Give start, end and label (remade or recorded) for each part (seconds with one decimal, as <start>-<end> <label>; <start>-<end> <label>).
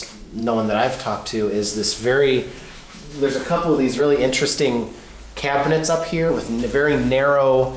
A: 0.0-0.4 recorded; 0.4-4.0 remade; 4.0-5.6 recorded; 5.6-6.3 remade; 6.3-7.8 recorded